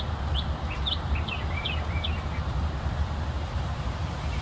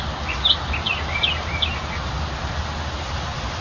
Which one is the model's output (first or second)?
first